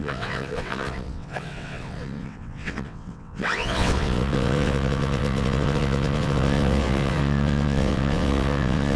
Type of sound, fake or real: fake